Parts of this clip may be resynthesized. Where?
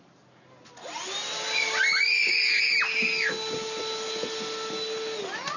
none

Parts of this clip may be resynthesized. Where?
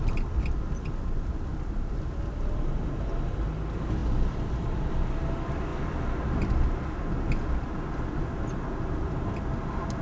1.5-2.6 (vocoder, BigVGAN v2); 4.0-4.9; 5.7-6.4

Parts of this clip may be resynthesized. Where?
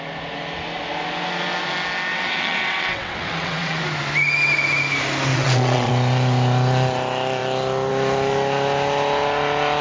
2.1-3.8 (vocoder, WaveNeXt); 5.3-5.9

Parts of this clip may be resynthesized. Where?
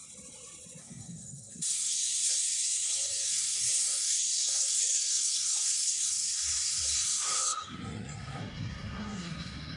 0.8-9.8 (codec, SNAC)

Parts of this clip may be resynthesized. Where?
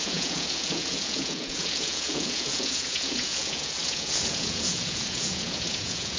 0.0-6.2 (vocoder, Vocos)